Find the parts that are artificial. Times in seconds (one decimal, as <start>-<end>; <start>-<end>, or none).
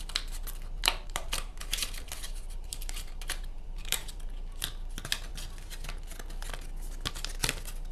0.8-4.3